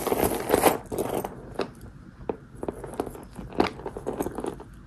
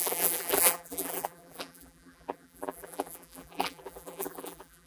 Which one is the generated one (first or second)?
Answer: second